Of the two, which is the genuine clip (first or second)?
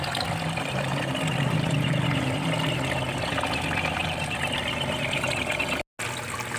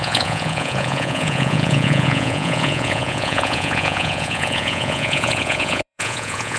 first